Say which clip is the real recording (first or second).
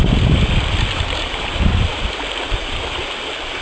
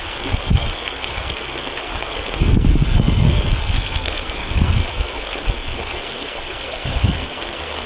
first